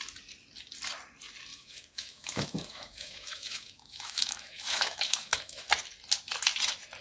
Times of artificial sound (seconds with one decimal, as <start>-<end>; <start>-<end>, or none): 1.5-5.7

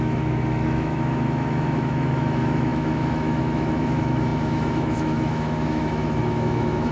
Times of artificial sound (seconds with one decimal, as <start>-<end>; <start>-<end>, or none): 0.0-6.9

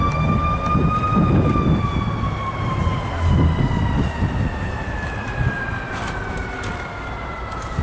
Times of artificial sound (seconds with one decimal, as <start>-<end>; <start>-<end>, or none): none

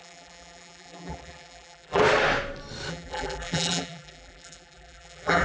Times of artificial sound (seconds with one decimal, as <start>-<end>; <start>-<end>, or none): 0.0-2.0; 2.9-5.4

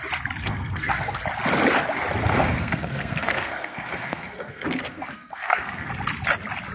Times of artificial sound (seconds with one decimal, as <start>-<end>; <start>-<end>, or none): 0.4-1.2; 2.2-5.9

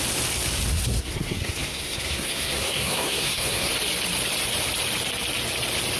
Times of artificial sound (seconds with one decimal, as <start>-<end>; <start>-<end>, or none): 0.7-3.7